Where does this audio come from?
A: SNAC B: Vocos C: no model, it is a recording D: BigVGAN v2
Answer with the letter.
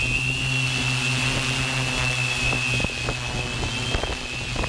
C